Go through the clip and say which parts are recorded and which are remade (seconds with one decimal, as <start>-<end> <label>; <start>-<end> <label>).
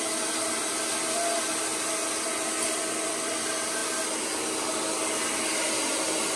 0.0-6.4 recorded